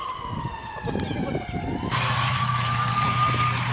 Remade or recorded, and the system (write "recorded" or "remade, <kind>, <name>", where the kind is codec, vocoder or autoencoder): recorded